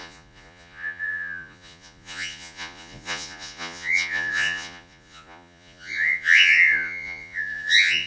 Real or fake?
fake